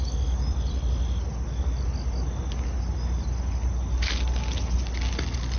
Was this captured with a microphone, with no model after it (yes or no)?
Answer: yes